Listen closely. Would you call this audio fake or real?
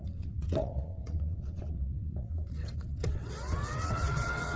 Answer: fake